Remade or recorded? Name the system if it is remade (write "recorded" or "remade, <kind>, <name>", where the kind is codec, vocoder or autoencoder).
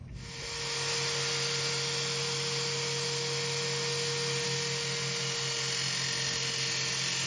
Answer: recorded